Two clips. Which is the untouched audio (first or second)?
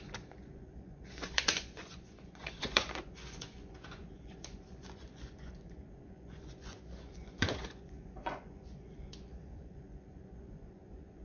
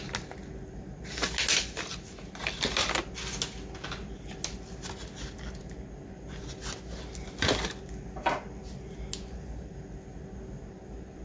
second